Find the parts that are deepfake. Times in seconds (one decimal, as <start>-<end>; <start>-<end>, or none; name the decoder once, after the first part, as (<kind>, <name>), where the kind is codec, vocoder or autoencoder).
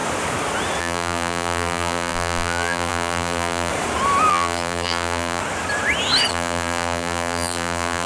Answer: 0.8-3.7 (vocoder, BigVGAN v2); 4.3-5.4; 6.3-8.1